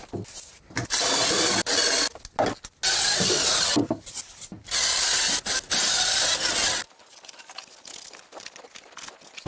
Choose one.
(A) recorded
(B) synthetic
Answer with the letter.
A